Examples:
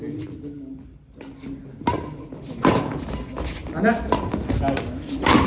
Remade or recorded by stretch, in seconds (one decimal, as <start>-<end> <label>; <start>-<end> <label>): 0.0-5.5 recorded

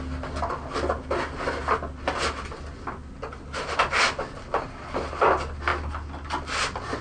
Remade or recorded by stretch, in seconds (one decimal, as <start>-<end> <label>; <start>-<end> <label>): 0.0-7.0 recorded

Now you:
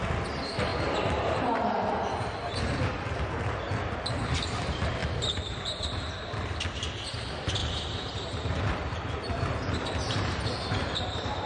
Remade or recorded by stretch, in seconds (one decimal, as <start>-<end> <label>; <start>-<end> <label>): 0.0-0.7 recorded; 0.7-2.9 remade; 2.9-5.0 recorded; 5.0-6.6 remade; 6.6-7.6 recorded; 7.6-11.5 remade

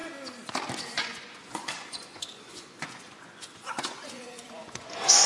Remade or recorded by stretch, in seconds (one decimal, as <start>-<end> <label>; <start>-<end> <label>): 0.0-0.8 recorded; 0.8-5.3 remade

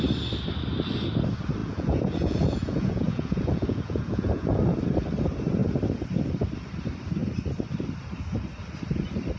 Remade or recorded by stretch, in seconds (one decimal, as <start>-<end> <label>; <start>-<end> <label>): 0.0-1.6 recorded; 1.6-4.6 remade; 4.6-9.4 recorded